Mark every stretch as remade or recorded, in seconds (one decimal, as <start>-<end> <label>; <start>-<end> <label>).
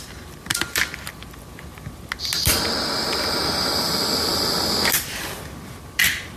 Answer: 0.0-6.4 recorded